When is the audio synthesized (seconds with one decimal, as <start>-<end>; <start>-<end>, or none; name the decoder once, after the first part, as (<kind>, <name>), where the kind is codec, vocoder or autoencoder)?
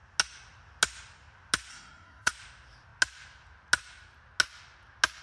1.7-2.3 (codec, SNAC)